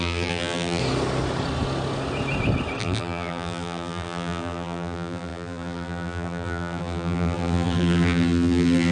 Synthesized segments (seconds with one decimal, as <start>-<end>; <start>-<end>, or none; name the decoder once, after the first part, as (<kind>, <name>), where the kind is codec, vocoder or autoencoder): 0.0-0.8 (vocoder, BigVGAN v2); 2.8-8.9